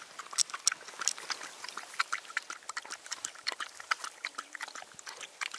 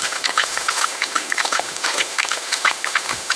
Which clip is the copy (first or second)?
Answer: second